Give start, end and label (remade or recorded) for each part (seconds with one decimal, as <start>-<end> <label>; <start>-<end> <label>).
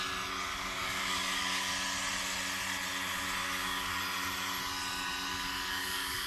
0.0-0.5 recorded; 0.5-1.7 remade; 1.7-3.4 recorded; 3.4-4.0 remade; 4.0-5.3 recorded; 5.3-6.3 remade